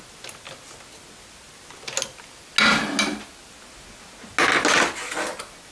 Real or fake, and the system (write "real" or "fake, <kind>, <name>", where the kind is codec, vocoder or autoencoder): real